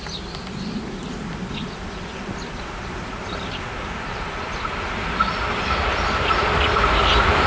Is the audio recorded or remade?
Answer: remade